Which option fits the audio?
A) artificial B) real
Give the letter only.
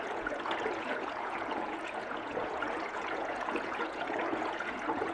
A